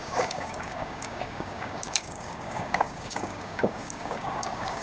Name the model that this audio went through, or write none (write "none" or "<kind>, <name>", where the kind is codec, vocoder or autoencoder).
codec, DAC